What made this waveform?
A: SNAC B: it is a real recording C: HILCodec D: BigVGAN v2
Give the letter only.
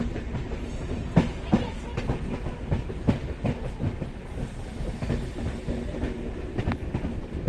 B